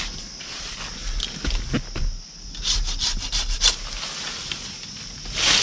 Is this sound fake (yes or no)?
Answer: no